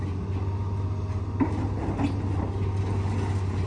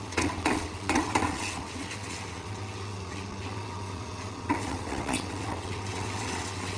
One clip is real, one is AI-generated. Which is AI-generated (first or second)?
second